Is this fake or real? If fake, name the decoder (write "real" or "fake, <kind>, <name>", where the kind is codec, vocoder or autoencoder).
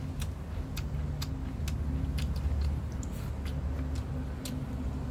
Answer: real